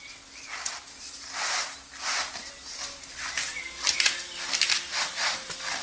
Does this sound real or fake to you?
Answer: real